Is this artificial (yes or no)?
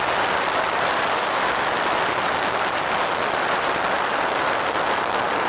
no